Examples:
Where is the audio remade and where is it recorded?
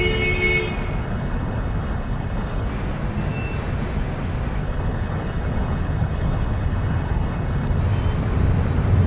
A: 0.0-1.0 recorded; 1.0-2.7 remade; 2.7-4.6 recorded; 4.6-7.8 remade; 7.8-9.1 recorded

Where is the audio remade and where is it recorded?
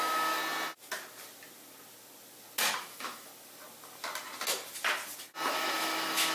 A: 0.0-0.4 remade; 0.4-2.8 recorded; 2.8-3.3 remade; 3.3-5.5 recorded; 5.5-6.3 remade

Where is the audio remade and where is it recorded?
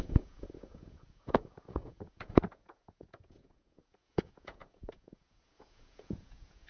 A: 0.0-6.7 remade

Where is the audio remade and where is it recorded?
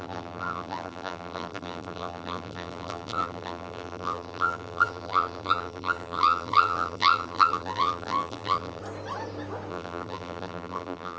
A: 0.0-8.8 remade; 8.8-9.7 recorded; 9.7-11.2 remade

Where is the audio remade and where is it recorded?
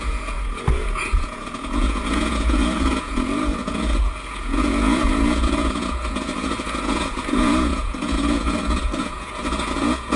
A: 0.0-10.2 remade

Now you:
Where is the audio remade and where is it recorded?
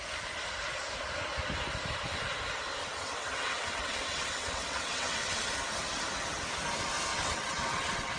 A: 0.0-2.8 recorded; 2.8-5.5 remade; 5.5-7.1 recorded; 7.1-8.2 remade